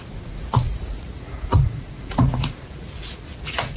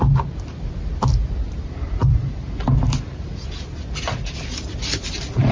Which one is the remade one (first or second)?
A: first